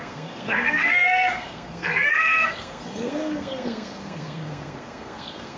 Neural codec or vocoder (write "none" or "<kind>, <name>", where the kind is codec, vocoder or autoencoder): codec, SNAC